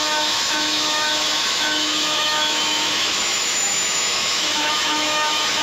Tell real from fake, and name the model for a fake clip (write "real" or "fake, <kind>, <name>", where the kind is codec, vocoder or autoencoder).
fake, autoencoder, DAC-VAE